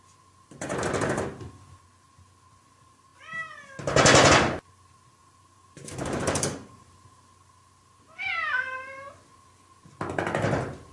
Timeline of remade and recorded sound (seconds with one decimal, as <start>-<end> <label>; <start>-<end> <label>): 0.0-5.2 recorded; 5.2-7.2 remade; 7.2-10.9 recorded